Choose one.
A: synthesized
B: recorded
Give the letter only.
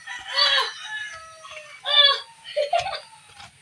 B